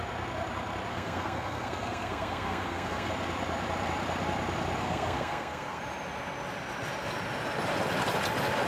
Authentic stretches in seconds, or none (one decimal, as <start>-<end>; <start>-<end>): 0.0-0.9; 3.1-4.8; 5.8-8.7

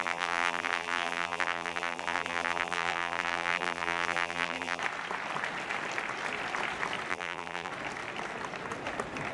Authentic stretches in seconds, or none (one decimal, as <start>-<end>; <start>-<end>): 4.8-7.1; 7.7-9.3

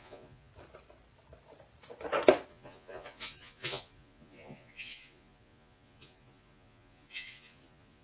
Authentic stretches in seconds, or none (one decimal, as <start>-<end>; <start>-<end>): 0.5-2.5

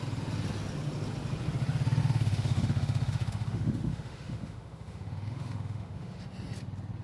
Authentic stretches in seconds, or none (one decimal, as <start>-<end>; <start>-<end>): 0.0-2.0; 6.2-7.0

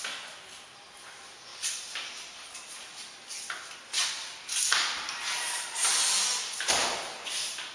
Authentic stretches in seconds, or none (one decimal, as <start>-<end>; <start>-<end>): 0.0-1.5; 3.4-5.3; 5.9-7.7

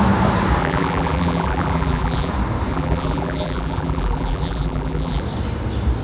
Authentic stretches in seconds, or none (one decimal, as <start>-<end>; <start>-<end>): 0.0-0.6; 2.3-2.7; 5.2-6.0